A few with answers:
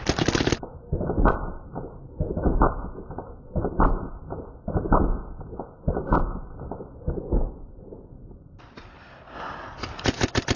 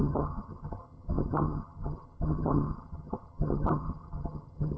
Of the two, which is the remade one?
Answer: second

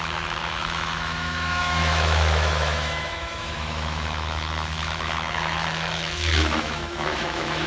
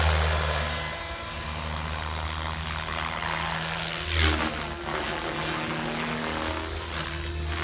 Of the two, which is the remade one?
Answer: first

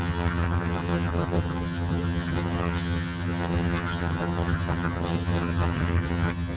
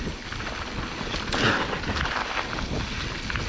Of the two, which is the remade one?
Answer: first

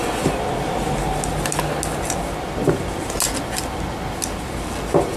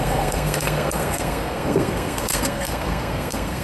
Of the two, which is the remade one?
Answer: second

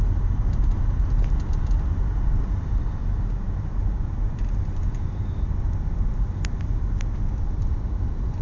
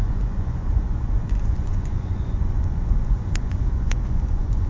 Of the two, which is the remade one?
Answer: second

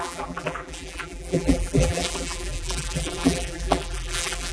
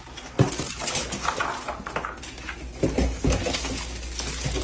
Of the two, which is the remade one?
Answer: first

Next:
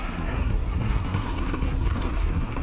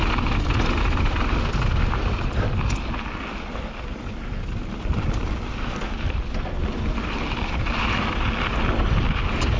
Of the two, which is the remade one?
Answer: first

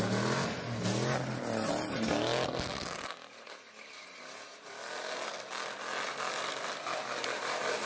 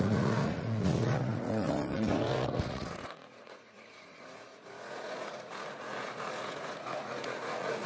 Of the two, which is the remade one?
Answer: second